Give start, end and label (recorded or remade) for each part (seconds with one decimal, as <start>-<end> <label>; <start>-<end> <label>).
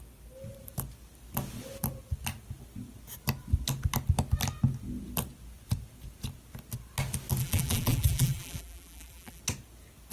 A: 0.0-7.4 recorded; 7.4-9.4 remade; 9.4-10.1 recorded